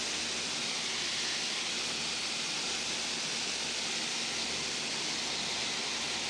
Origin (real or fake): real